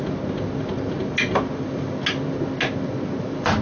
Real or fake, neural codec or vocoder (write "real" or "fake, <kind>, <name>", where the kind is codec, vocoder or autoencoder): real